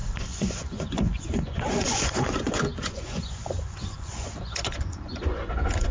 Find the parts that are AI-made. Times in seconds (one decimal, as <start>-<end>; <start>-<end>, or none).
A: 0.0-5.9